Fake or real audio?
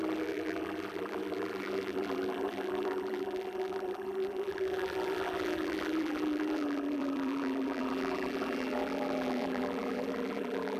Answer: fake